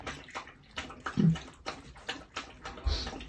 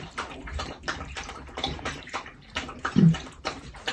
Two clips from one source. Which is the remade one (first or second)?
second